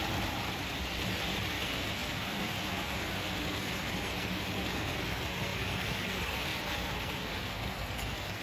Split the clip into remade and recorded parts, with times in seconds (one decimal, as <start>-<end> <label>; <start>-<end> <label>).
0.0-1.5 recorded; 1.5-8.4 remade